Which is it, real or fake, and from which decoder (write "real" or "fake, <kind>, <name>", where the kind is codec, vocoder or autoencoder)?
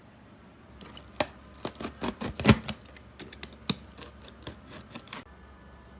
real